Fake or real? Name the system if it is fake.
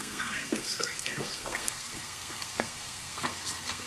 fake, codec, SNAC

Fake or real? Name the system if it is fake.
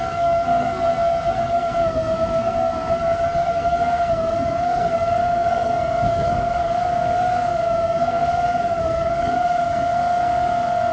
fake, codec, SNAC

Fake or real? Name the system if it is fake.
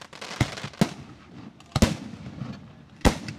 real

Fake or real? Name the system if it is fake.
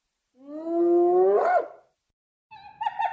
real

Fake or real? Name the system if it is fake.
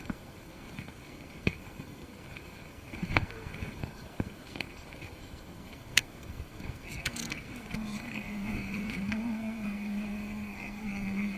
fake, codec, SNAC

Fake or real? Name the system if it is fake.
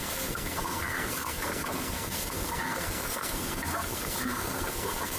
fake, codec, SNAC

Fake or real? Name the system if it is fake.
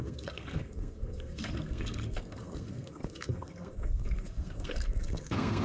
fake, codec, SNAC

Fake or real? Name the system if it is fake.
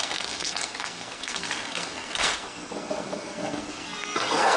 fake, codec, SNAC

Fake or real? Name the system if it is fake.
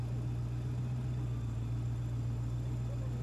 real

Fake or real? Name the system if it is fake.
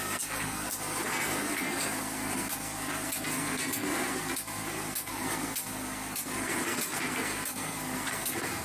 fake, codec, SNAC